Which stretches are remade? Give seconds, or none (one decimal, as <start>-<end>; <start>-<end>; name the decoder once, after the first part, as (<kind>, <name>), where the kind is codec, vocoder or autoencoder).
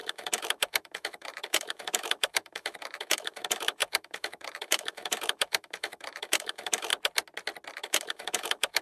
0.0-6.9 (autoencoder, DAC-VAE); 7.7-8.8